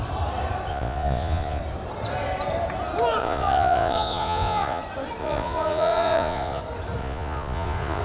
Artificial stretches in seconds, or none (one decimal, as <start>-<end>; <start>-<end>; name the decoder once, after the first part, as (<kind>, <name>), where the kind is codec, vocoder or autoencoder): 0.7-1.6 (vocoder, Vocos); 3.2-4.8; 5.2-6.6; 7.0-8.0